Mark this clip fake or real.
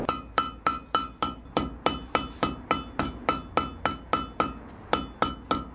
real